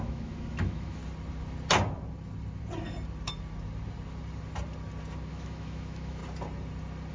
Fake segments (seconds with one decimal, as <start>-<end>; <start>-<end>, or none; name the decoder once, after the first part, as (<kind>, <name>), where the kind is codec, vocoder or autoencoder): 0.0-1.0 (autoencoder, DAC-VAE); 5.3-6.2